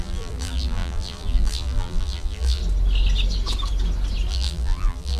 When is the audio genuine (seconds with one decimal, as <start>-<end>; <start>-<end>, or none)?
2.6-4.3